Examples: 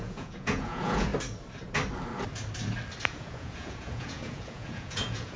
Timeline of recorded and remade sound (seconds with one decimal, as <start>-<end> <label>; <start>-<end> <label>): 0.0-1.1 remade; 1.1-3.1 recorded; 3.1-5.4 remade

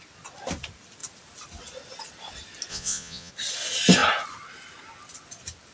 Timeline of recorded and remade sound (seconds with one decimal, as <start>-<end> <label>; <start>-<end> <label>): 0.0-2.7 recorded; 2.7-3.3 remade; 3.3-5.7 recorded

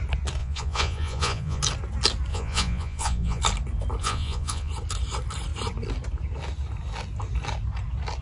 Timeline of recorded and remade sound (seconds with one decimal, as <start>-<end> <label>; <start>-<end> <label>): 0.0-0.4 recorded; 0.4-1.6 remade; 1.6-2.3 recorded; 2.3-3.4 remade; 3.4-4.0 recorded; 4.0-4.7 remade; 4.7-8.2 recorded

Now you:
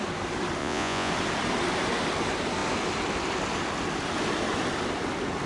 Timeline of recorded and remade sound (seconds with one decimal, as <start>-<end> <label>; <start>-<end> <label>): 0.0-0.6 recorded; 0.6-1.1 remade; 1.1-5.5 recorded

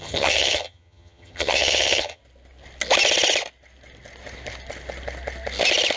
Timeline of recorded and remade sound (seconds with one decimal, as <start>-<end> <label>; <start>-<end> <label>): 0.0-2.2 remade; 2.2-6.0 recorded